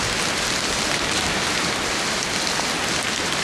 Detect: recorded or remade recorded